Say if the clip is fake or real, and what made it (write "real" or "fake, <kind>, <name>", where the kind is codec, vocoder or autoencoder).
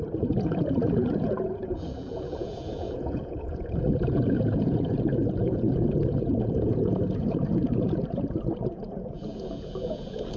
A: fake, vocoder, Vocos